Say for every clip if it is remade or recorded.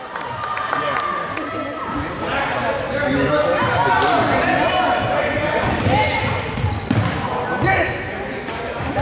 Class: recorded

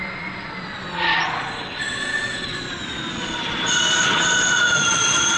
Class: remade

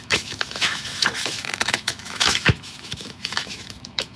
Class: remade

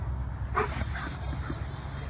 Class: recorded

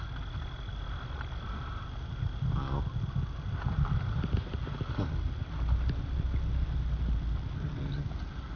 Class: recorded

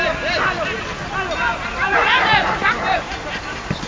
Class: recorded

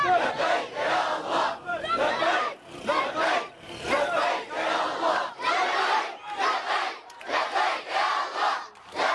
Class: remade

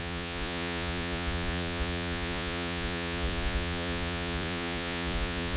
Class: remade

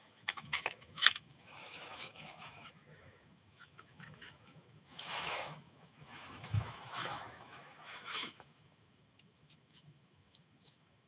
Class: remade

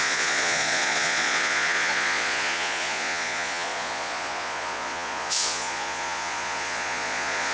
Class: remade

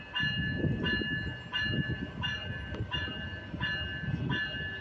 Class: recorded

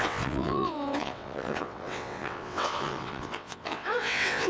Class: remade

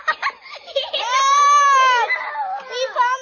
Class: recorded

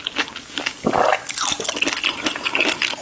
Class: recorded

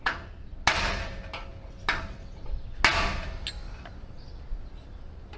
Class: recorded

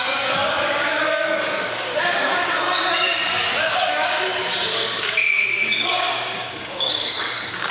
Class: remade